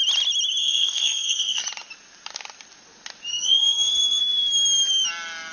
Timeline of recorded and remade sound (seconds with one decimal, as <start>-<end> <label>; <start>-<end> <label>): 0.0-0.6 recorded; 0.6-1.6 remade; 1.6-3.3 recorded; 3.3-4.2 remade; 4.2-5.5 recorded

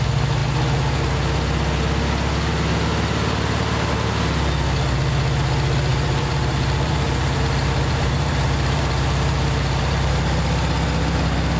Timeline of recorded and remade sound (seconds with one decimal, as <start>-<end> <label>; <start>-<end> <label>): 0.0-5.9 recorded; 5.9-10.1 remade; 10.1-11.6 recorded

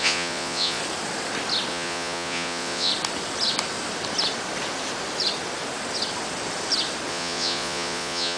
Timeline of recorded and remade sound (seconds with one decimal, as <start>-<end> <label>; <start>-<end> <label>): 0.0-0.8 remade; 0.8-1.7 recorded; 1.7-2.9 remade; 2.9-7.1 recorded; 7.1-8.4 remade